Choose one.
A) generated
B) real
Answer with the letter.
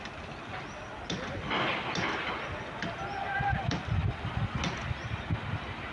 B